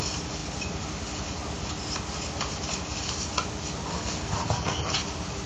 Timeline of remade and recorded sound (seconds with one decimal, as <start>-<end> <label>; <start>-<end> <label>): 0.0-3.9 recorded; 3.9-4.8 remade; 4.8-5.5 recorded